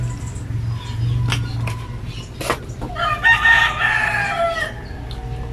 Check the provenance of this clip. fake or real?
real